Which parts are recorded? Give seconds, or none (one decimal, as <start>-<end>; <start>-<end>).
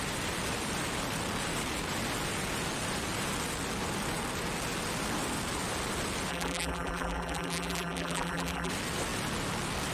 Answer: 0.0-6.3; 8.7-9.9